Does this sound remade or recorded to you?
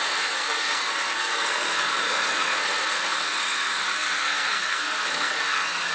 remade